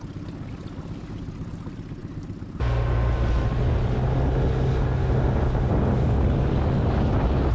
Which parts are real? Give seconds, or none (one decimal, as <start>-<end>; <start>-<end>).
0.0-7.5